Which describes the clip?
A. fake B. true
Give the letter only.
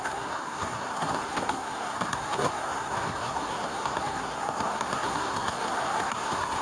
A